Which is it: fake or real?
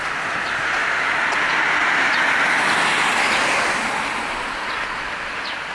real